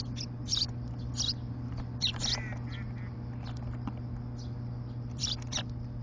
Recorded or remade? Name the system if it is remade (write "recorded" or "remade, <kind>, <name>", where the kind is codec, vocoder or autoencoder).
remade, vocoder, BigVGAN v2